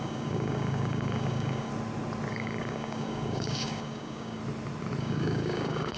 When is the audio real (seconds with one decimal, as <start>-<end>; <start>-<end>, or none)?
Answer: 1.7-2.3; 4.4-5.0

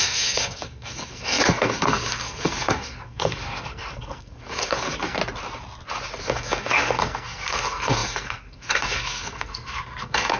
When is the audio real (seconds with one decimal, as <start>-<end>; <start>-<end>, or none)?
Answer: 5.2-6.2